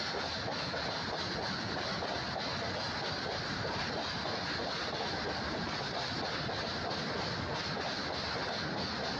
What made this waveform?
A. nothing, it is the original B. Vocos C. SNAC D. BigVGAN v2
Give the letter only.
A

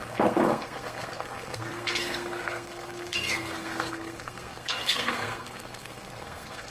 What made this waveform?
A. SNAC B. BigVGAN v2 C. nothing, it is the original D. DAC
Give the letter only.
A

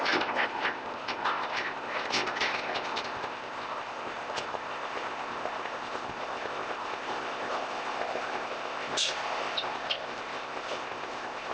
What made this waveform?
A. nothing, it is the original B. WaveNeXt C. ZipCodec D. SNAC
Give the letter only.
C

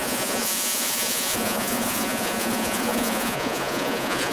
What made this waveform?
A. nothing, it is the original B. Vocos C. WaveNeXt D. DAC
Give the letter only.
B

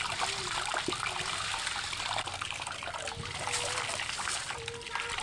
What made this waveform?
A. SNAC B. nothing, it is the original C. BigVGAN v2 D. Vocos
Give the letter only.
B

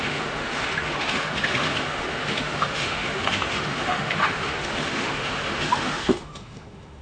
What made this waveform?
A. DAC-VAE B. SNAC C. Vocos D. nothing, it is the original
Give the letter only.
A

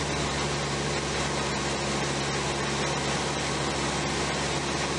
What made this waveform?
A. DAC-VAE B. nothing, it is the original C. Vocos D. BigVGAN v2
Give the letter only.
B